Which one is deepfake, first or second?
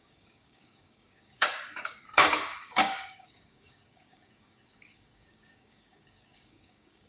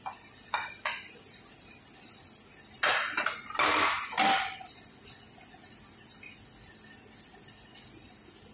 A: first